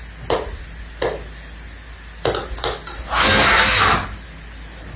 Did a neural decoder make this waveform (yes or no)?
no